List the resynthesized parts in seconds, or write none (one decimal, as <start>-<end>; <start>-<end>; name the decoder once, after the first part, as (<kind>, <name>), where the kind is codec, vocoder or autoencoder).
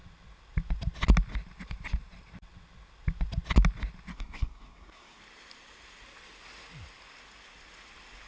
4.1-5.2 (codec, SNAC)